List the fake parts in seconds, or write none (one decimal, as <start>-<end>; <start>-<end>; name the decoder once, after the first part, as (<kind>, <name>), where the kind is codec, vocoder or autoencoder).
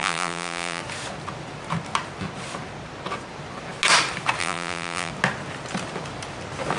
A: 0.0-0.8 (vocoder, BigVGAN v2); 4.4-5.1